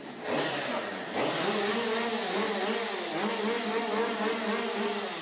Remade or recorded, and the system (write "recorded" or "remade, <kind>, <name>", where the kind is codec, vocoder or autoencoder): recorded